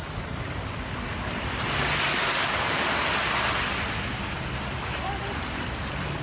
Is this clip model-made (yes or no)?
no